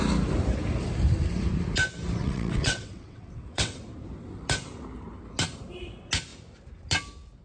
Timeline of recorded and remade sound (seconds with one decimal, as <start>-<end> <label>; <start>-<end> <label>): 0.0-2.2 recorded; 2.2-3.8 remade; 3.8-7.4 recorded